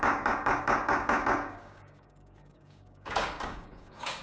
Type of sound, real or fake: fake